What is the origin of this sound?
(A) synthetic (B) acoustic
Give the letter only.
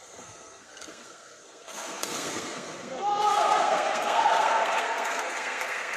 A